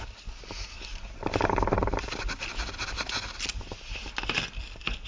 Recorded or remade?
recorded